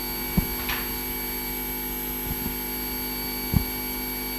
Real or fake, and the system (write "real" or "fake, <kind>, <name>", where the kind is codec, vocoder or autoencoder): real